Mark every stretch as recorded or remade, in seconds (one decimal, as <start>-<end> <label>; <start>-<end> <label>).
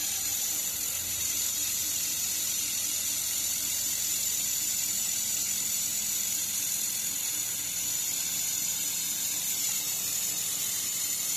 0.0-11.4 remade